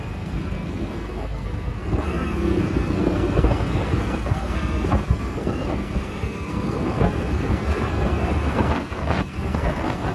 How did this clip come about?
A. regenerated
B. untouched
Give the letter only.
A